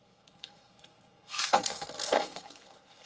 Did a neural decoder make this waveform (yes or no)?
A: yes